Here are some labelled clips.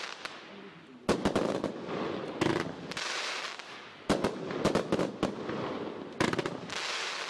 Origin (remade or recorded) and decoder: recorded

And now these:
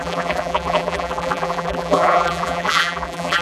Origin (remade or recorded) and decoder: remade, vocoder, BigVGAN v2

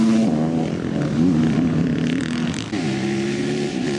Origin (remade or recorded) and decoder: recorded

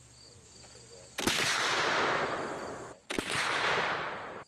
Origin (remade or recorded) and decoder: recorded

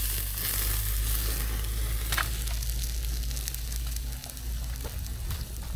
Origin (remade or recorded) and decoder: recorded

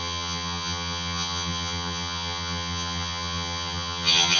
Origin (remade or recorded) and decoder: remade, vocoder, HiFi-GAN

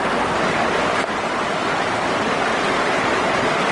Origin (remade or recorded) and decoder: recorded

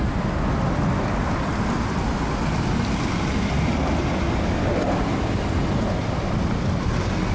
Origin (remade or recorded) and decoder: recorded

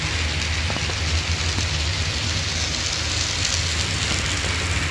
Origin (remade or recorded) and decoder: recorded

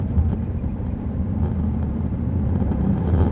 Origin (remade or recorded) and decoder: remade, vocoder, BigVGAN v2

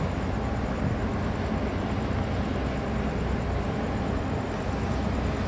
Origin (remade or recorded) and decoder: recorded